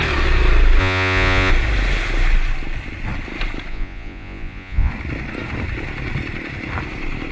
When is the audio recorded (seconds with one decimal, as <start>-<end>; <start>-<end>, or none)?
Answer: 0.0-0.8; 1.5-3.7; 4.9-7.3